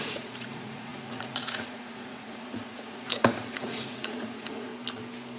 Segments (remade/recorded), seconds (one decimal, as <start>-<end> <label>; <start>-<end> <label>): 0.0-4.7 remade; 4.7-5.4 recorded